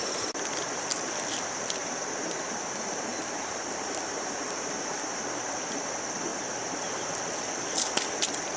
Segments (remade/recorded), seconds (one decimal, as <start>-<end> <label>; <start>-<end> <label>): 0.0-0.9 recorded; 0.9-2.4 remade; 2.4-3.1 recorded; 3.1-5.2 remade; 5.2-6.3 recorded; 6.3-7.2 remade; 7.2-8.6 recorded

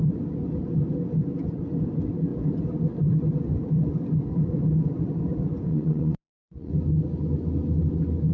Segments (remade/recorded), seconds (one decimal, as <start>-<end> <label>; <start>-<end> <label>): 0.0-5.7 recorded; 5.7-6.7 remade; 6.7-8.3 recorded

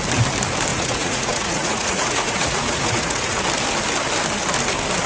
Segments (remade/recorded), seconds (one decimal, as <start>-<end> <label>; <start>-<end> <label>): 0.0-0.7 recorded; 0.7-3.4 remade; 3.4-5.1 recorded

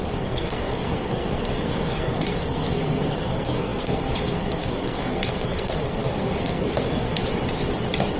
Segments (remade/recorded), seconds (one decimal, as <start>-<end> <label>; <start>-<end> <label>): 0.0-7.3 remade; 7.3-8.2 recorded

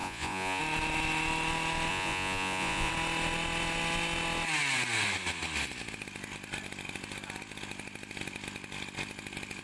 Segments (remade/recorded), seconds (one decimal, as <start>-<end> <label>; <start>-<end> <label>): 0.0-0.6 remade; 0.6-1.9 recorded; 1.9-2.9 remade; 2.9-9.6 recorded

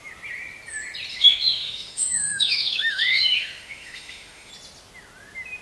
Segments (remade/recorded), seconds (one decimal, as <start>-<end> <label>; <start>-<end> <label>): 0.0-1.1 recorded; 1.1-4.5 remade; 4.5-5.6 recorded

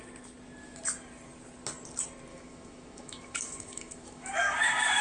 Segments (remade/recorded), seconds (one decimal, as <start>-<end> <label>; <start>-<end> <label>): 0.0-2.3 recorded; 2.3-5.0 remade

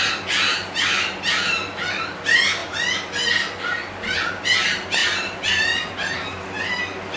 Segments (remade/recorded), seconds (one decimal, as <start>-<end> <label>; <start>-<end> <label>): 0.0-0.5 recorded; 0.5-1.9 remade; 1.9-7.2 recorded